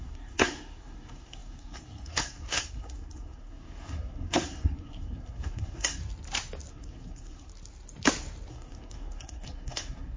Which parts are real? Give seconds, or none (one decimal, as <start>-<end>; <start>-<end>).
6.0-6.7; 7.5-8.5